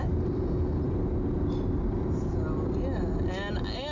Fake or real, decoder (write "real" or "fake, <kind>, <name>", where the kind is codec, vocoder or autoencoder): real